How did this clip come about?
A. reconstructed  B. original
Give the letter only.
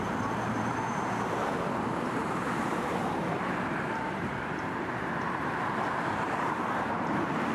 A